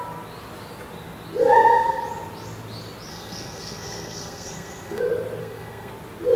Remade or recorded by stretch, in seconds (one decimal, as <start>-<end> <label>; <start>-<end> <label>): 0.0-1.4 recorded; 1.4-2.0 remade; 2.0-3.1 recorded; 3.1-5.0 remade; 5.0-5.4 recorded; 5.4-5.9 remade; 5.9-6.4 recorded